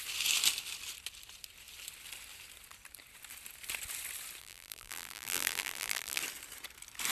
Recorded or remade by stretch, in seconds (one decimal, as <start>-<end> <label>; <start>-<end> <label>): 0.0-4.4 recorded; 4.4-6.2 remade; 6.2-7.1 recorded